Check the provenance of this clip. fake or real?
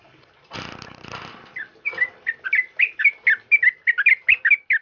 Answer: real